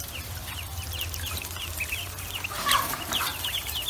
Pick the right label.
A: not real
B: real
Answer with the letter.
B